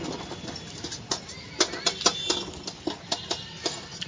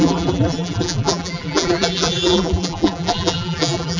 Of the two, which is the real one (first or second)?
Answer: first